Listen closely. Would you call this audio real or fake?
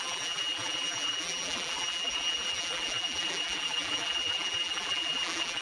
fake